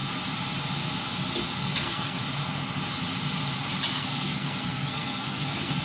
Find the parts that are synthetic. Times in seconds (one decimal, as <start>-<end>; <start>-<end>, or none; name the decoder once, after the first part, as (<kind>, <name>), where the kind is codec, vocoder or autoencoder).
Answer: 1.6-2.2 (codec, SNAC); 3.9-5.8